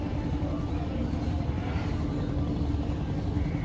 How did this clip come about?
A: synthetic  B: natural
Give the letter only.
B